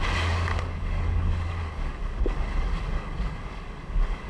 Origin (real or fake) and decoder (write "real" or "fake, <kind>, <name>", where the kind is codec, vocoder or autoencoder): fake, codec, DAC